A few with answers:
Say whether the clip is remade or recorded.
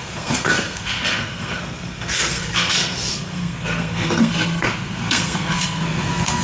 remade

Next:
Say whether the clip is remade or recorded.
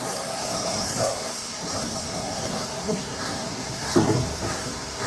remade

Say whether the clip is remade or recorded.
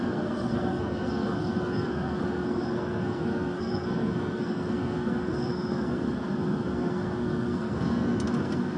remade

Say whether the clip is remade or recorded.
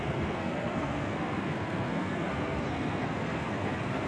remade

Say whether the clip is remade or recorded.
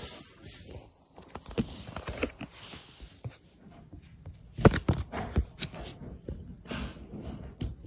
recorded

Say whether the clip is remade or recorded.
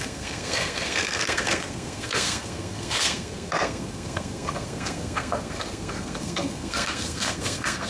remade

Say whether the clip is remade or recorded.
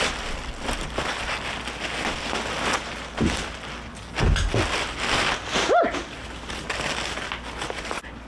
recorded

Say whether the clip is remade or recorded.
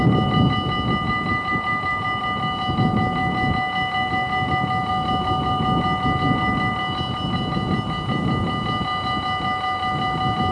recorded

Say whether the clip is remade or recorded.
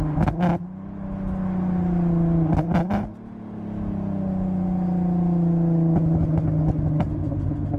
recorded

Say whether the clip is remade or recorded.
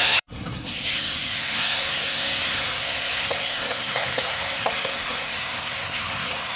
remade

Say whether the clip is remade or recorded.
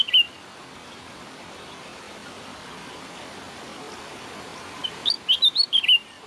recorded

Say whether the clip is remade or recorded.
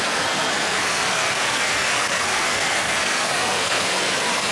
remade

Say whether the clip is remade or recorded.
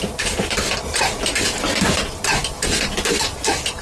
recorded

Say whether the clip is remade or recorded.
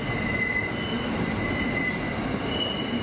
recorded